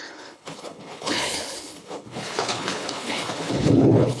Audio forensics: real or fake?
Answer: fake